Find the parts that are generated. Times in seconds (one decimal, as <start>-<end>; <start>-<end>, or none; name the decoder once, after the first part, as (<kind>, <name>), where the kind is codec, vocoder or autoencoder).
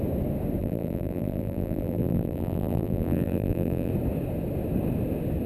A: 0.6-3.9 (vocoder, BigVGAN v2)